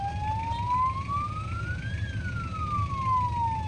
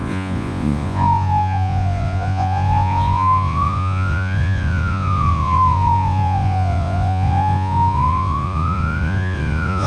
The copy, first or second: second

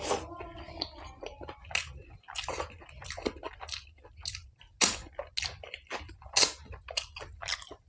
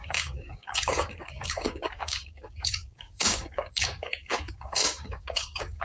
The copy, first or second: second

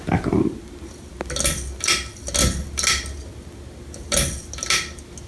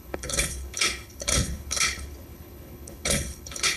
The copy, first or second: second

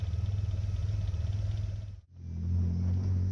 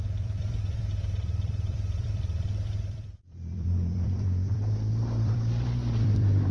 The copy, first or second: second